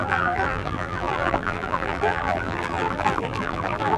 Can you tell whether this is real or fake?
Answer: fake